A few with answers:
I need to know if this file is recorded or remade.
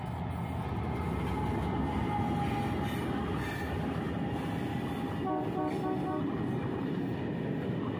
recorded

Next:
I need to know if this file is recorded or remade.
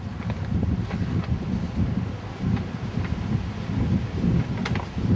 recorded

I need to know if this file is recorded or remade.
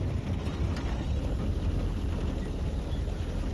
recorded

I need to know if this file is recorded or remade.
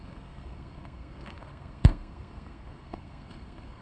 remade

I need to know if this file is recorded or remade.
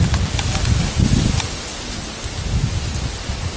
recorded